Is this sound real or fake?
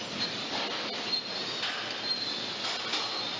real